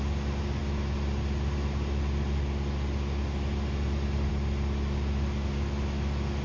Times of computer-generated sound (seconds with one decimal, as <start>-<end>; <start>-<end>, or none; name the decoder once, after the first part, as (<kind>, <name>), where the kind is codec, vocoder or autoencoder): none